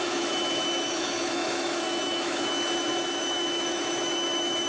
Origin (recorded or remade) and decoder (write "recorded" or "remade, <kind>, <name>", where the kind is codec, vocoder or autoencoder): remade, autoencoder, DAC-VAE